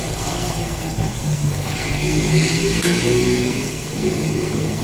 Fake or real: fake